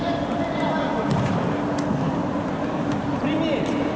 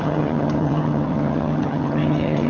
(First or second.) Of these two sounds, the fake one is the second